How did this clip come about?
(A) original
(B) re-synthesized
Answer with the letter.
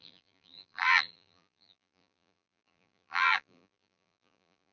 B